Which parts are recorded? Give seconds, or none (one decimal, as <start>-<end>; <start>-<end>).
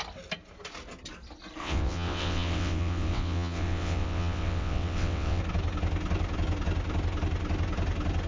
0.0-1.6; 5.4-8.3